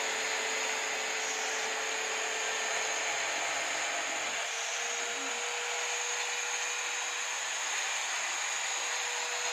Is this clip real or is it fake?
real